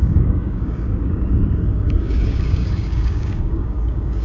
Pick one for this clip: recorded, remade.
remade